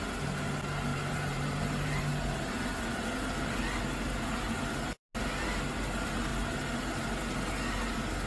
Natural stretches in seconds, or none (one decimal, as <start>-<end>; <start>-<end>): 0.0-0.9; 2.3-8.3